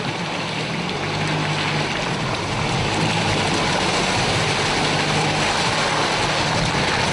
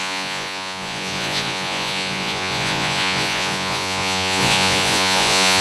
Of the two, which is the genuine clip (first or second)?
first